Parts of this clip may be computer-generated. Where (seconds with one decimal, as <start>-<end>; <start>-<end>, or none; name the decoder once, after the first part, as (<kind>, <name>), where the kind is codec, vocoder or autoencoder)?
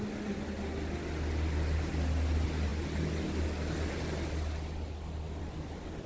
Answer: none